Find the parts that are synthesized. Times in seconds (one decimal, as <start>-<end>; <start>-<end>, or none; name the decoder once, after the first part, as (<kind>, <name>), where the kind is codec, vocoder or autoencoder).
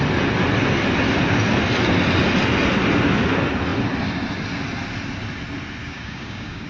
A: 5.8-6.7 (codec, DAC)